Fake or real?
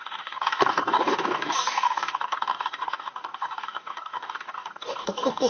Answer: fake